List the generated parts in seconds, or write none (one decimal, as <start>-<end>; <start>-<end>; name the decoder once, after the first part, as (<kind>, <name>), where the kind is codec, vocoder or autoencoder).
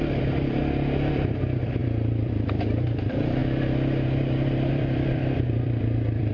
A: 0.0-0.6 (vocoder, BigVGAN v2); 1.1-3.4; 4.7-6.3